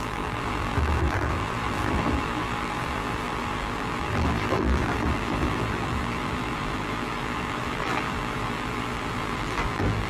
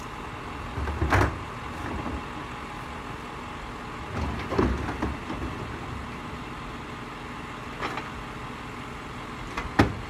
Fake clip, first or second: first